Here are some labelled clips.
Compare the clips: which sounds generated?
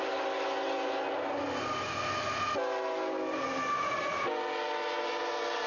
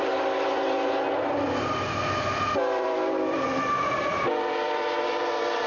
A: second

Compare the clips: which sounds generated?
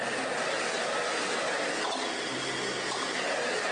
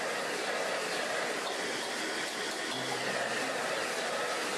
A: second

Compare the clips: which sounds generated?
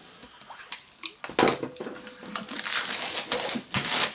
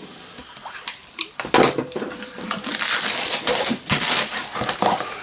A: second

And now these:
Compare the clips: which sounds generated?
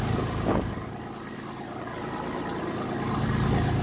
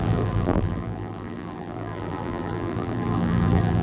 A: second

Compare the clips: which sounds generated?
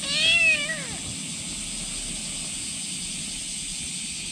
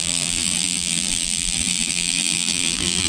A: second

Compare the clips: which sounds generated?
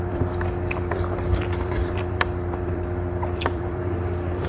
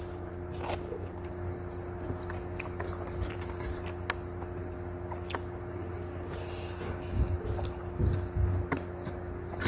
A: first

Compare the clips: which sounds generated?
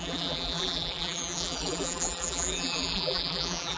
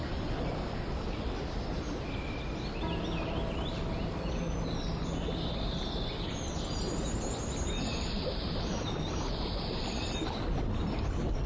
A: first